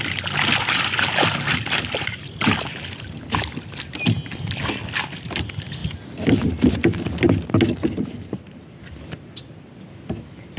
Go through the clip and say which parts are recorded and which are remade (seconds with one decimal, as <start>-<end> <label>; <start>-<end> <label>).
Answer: 0.0-10.6 recorded